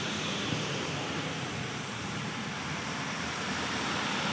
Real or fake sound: fake